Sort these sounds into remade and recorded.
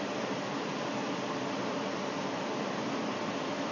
recorded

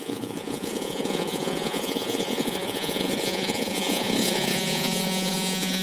remade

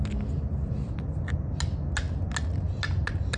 recorded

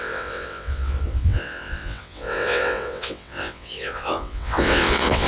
remade